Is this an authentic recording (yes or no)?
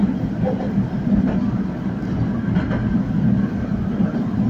yes